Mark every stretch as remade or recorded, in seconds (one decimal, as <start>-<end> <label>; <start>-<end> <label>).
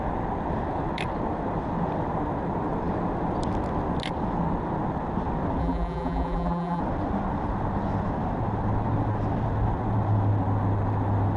0.0-5.6 recorded; 5.6-6.8 remade; 6.8-11.4 recorded